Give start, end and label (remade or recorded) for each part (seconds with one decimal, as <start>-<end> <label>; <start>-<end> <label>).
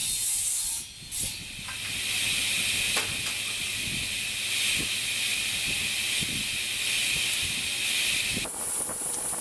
0.0-9.4 recorded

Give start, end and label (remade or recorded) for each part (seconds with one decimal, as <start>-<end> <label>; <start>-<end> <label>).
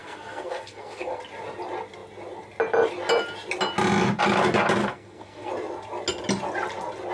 0.0-1.2 remade; 1.2-4.8 recorded; 4.8-5.5 remade; 5.5-7.1 recorded